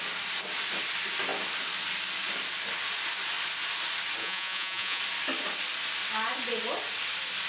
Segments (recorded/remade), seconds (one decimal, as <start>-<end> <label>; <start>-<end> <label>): 0.0-4.2 recorded; 4.2-5.0 remade; 5.0-7.5 recorded